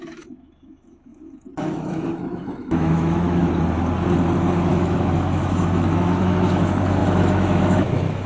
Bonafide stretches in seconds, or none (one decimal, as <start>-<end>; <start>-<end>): 3.4-4.7